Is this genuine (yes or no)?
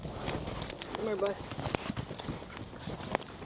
yes